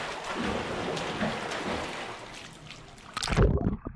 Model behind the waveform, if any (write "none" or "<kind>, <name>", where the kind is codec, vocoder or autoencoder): none